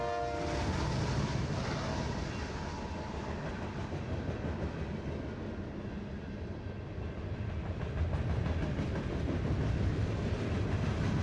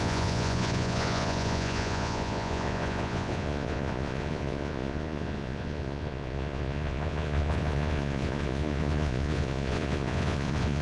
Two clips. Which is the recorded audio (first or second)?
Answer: first